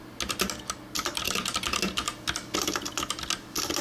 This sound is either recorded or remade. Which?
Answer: recorded